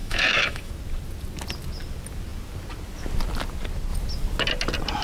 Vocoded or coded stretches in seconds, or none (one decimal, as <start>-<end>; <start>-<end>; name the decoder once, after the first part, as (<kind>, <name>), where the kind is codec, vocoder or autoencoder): 0.0-0.7 (autoencoder, DAC-VAE)